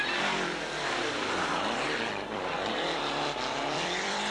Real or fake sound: fake